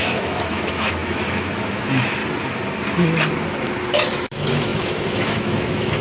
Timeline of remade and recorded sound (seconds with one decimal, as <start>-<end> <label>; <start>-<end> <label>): 0.0-2.2 remade; 2.2-3.8 recorded; 3.8-6.0 remade